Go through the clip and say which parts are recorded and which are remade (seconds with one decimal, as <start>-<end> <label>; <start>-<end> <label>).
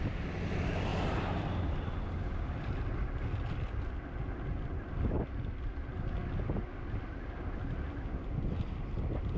0.0-9.4 recorded